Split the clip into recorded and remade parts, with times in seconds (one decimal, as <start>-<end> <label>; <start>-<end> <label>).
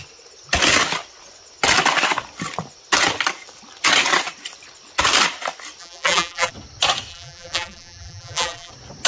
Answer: 0.0-5.8 recorded; 5.8-6.5 remade; 6.5-7.1 recorded; 7.1-8.7 remade; 8.7-9.1 recorded